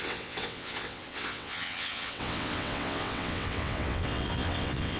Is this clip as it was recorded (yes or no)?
no